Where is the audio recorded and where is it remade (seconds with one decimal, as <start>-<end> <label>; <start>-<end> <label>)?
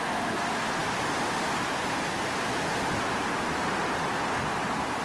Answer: 0.0-5.0 recorded